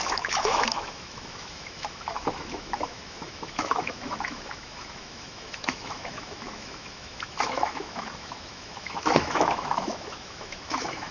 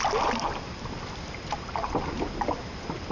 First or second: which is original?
second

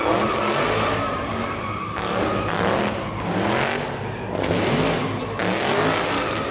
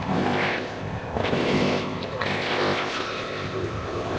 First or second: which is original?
first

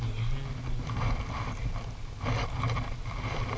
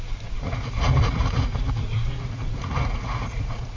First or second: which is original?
first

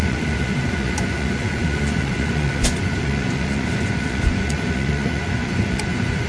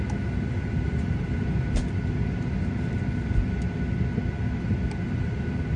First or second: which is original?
second